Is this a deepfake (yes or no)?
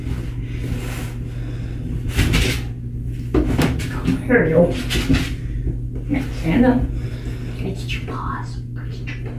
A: no